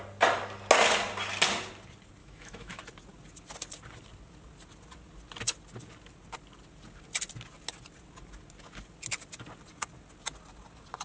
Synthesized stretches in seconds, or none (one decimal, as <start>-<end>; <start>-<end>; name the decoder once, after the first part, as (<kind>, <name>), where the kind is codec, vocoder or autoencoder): 2.2-2.8 (autoencoder, DAC-VAE)